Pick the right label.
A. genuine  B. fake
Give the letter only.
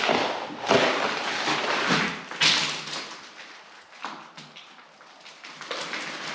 A